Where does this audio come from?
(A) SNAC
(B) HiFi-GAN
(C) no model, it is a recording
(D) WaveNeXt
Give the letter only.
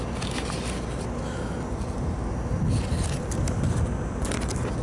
C